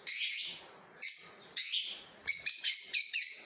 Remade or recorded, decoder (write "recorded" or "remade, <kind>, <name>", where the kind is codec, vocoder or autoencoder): remade, vocoder, Vocos